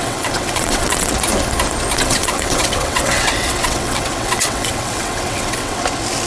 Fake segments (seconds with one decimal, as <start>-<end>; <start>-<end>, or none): 0.0-1.1; 2.0-5.8

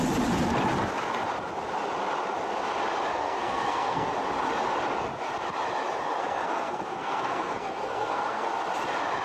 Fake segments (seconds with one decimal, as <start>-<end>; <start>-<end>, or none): 3.1-4.1; 6.2-8.5